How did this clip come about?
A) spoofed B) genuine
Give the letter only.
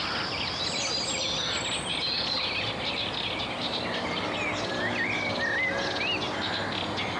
B